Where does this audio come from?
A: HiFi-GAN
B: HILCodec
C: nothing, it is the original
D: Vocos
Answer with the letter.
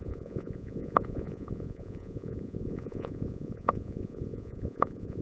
D